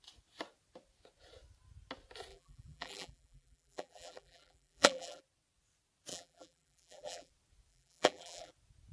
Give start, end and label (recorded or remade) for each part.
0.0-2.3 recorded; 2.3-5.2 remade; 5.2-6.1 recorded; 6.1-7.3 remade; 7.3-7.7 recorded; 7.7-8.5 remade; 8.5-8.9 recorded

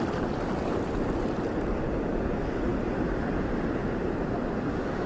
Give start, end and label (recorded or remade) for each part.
0.0-3.8 recorded; 3.8-4.4 remade; 4.4-5.1 recorded